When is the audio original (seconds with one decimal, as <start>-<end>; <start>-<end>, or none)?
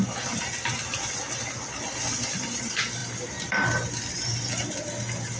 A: 0.0-5.4